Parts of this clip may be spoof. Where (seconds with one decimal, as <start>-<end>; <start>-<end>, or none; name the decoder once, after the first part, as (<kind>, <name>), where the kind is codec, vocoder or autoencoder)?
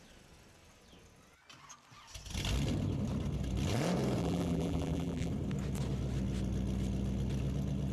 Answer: 4.2-5.3 (vocoder, BigVGAN v2)